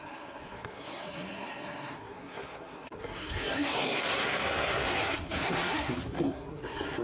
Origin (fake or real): fake